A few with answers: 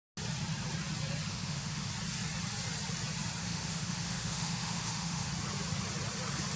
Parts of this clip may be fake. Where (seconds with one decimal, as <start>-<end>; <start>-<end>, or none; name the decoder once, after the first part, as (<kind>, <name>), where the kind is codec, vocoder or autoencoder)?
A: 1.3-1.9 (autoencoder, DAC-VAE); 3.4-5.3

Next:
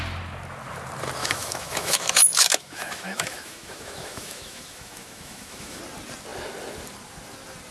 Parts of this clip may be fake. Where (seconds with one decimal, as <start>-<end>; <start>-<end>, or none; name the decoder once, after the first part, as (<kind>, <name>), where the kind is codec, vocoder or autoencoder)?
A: 1.2-5.8 (autoencoder, DAC-VAE)

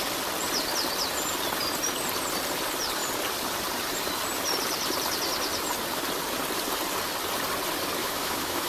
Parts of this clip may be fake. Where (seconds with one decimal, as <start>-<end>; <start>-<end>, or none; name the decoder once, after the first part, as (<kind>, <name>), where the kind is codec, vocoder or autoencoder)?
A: 8.0-8.7 (autoencoder, DAC-VAE)